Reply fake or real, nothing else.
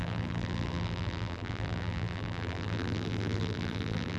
fake